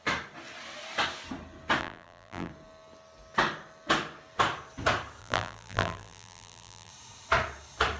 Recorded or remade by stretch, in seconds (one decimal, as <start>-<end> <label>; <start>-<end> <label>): 0.0-1.8 recorded; 1.8-2.5 remade; 2.5-5.2 recorded; 5.2-6.9 remade; 6.9-8.0 recorded